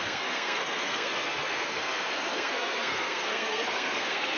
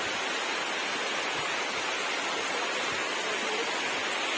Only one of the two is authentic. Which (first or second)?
second